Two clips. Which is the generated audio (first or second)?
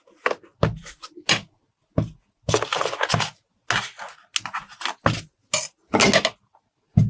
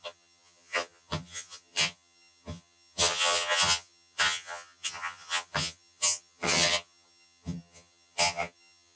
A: second